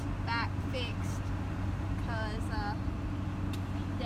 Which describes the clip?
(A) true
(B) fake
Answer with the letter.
A